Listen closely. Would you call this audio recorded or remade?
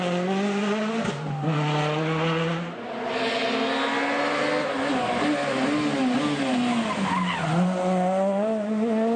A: recorded